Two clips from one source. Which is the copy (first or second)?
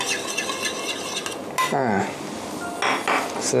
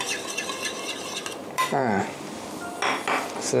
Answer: second